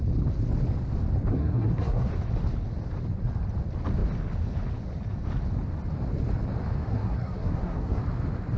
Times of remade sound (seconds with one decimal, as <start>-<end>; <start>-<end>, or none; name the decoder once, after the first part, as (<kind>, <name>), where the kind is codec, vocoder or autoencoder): 1.3-2.1 (codec, SNAC); 6.8-8.0